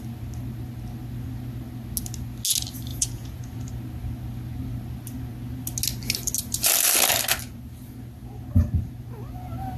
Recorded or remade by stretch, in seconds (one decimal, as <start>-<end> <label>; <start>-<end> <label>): 0.0-2.9 recorded; 2.9-3.4 remade; 3.4-9.8 recorded